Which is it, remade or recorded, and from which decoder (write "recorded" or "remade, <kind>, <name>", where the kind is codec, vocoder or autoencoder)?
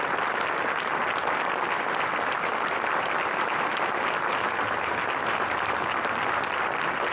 recorded